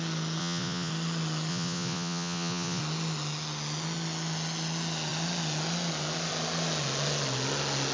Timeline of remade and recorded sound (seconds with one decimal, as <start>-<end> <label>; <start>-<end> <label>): 0.0-0.4 recorded; 0.4-0.9 remade; 0.9-1.5 recorded; 1.5-2.8 remade; 2.8-7.9 recorded